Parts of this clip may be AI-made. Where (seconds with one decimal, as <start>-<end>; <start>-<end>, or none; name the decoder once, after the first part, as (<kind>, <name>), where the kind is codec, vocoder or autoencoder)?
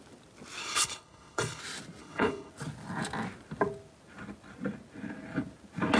0.6-1.6 (codec, HILCodec); 2.0-2.5